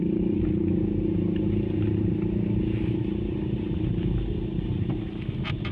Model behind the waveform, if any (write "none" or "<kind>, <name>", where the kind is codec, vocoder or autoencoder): none